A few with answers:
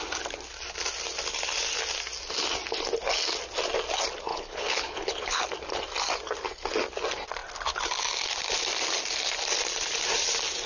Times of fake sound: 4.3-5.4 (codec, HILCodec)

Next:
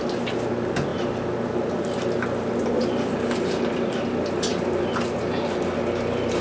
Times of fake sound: none

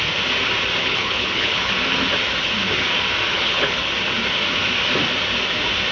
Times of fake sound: 0.8-1.7 (codec, HILCodec); 3.3-3.9

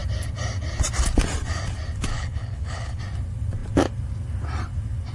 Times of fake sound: 2.1-3.0 (codec, HILCodec)

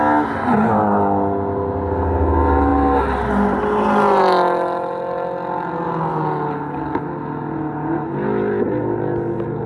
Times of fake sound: none

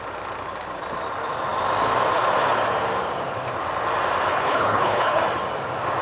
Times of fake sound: 4.3-5.2 (codec, HILCodec)

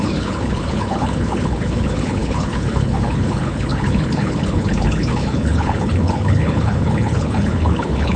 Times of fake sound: 0.0-8.2 (codec, HILCodec)